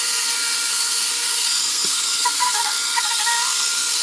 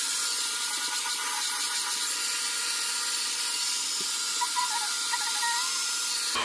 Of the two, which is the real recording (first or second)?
second